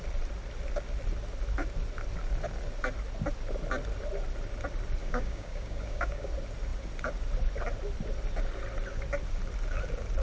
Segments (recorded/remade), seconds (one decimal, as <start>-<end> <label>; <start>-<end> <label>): 0.0-5.0 recorded; 5.0-6.3 remade; 6.3-10.2 recorded